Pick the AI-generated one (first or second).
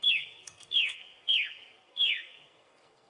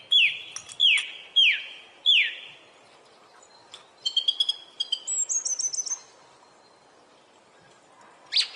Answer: first